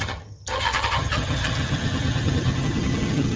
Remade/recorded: remade